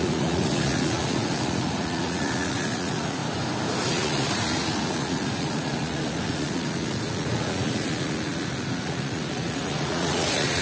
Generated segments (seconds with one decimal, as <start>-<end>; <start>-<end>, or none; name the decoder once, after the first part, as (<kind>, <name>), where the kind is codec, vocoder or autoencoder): 0.0-3.2 (vocoder, Vocos); 3.9-10.6